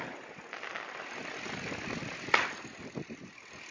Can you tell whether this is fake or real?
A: real